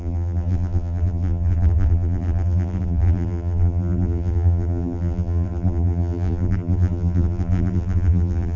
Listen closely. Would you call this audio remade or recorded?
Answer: remade